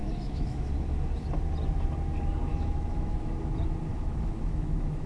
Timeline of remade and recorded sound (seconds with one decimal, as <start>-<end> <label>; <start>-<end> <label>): 0.0-0.7 remade; 0.7-2.5 recorded; 2.5-3.4 remade; 3.4-3.9 recorded; 3.9-5.1 remade

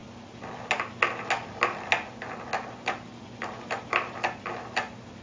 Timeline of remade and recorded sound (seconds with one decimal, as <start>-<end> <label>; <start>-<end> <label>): 0.0-5.2 recorded

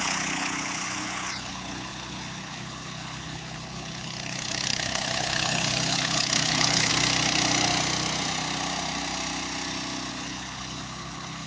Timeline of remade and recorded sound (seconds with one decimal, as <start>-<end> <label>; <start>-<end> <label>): 0.0-6.9 remade; 6.9-10.1 recorded; 10.1-11.5 remade